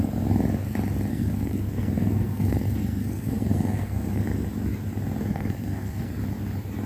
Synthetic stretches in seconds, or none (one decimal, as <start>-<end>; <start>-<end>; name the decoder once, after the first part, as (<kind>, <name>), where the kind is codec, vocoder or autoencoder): 1.1-4.2 (codec, SNAC); 5.3-6.1